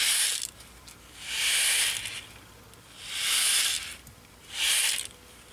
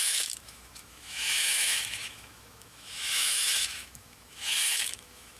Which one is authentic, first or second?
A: first